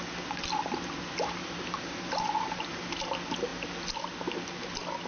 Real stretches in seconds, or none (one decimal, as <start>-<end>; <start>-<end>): 0.0-1.4; 2.8-5.1